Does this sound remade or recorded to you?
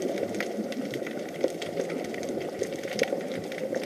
recorded